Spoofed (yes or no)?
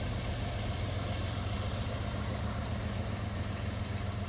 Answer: yes